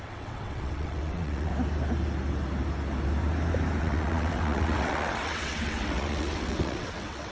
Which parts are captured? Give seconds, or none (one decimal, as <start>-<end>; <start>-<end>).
1.5-3.8